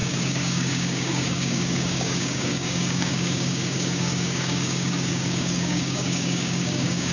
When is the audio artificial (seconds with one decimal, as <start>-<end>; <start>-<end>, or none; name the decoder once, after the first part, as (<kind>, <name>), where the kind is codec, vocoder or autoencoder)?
0.0-7.1 (codec, DAC)